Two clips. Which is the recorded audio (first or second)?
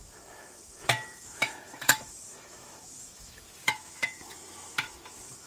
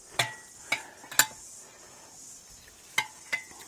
second